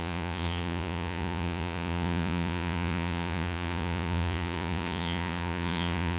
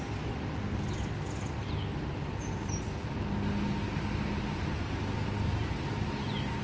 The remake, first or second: first